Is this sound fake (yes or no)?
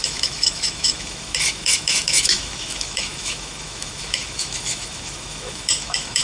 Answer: yes